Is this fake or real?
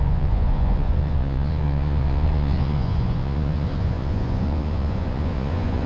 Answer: fake